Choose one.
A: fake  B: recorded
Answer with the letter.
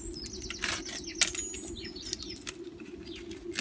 B